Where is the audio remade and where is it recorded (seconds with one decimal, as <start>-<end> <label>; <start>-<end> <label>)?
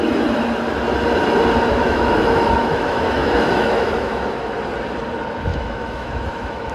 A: 0.0-1.7 recorded; 1.7-4.5 remade; 4.5-5.5 recorded; 5.5-6.7 remade